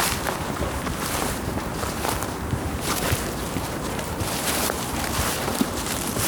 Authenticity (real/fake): fake